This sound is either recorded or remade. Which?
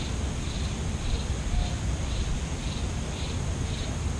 recorded